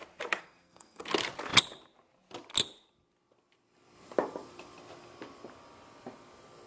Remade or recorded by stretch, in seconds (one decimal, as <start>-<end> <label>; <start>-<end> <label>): 0.0-0.4 recorded; 0.4-1.0 remade; 1.0-6.7 recorded